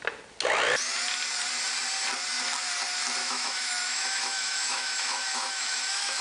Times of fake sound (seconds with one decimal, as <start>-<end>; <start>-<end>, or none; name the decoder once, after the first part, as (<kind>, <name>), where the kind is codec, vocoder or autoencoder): 3.2-6.2 (autoencoder, DAC-VAE)